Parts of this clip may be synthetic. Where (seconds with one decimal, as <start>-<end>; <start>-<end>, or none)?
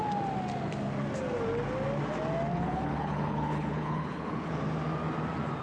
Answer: 2.5-4.5